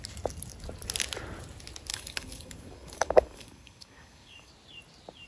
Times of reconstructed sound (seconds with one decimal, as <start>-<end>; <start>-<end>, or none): 1.9-4.5

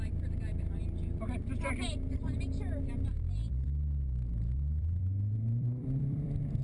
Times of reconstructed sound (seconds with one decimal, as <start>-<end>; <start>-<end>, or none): 0.0-6.6

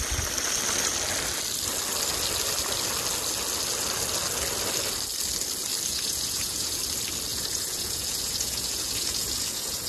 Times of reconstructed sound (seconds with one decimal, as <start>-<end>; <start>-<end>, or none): 5.9-6.8; 7.3-9.9

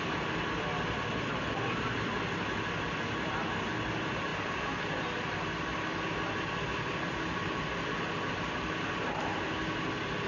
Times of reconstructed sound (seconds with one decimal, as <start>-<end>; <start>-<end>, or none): none